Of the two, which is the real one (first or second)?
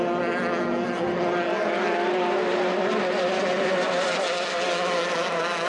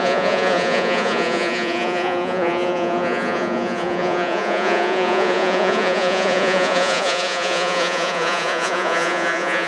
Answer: first